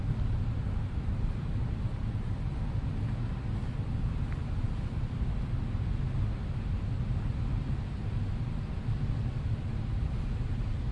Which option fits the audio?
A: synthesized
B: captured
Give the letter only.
B